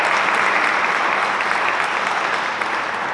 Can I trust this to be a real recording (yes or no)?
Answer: yes